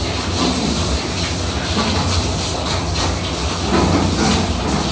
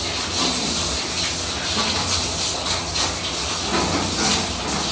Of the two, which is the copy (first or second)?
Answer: first